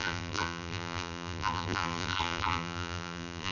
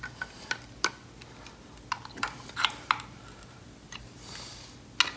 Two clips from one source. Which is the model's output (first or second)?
first